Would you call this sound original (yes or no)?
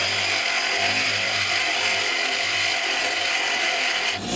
yes